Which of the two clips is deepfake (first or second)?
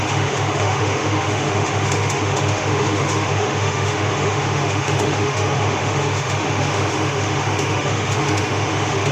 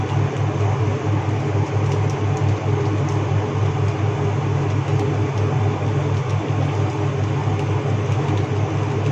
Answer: first